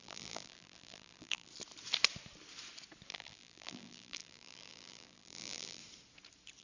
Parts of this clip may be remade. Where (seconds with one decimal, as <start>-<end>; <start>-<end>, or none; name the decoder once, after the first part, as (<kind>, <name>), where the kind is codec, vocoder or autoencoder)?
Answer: 0.0-1.5 (vocoder, BigVGAN v2); 3.1-5.8